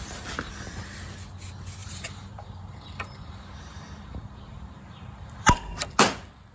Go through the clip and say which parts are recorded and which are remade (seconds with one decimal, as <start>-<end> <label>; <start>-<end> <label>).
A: 0.0-1.8 recorded; 1.8-5.7 remade; 5.7-6.5 recorded